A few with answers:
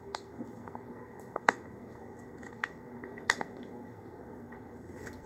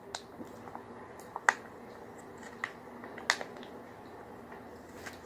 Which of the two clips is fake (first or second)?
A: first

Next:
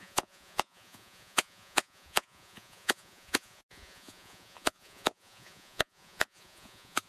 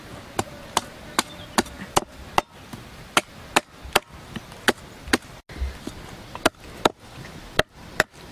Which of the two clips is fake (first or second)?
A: first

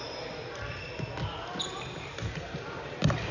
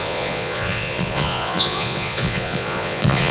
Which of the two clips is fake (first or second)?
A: second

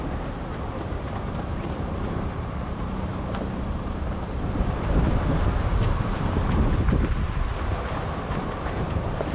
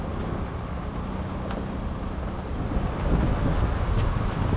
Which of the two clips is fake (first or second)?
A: first